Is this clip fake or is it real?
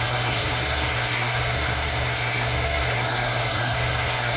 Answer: fake